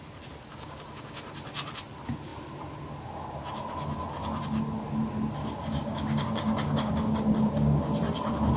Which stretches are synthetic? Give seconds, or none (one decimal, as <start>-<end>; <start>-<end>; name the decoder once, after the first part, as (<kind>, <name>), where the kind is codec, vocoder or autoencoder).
0.5-1.2 (codec, DAC); 5.4-7.8